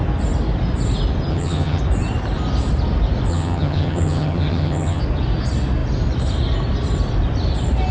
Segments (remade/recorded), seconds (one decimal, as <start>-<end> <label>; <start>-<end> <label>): 0.0-1.3 recorded; 1.3-1.8 remade; 1.8-3.3 recorded; 3.3-5.0 remade; 5.0-7.9 recorded